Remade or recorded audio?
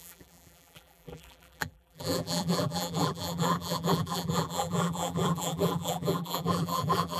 remade